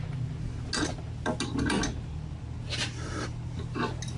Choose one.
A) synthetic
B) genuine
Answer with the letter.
B